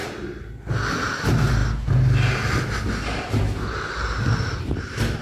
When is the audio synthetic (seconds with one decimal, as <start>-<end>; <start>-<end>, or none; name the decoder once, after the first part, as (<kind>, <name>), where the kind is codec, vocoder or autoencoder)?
none